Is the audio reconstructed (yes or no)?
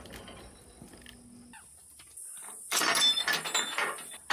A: no